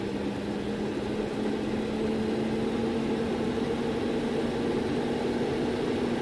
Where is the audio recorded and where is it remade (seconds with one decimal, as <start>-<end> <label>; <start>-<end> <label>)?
0.0-2.8 recorded; 2.8-4.0 remade; 4.0-6.2 recorded